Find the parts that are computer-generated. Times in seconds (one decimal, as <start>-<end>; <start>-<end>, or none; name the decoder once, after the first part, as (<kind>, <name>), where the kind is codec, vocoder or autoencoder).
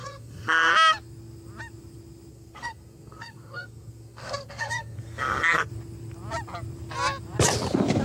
0.0-0.7 (codec, SNAC); 2.3-5.7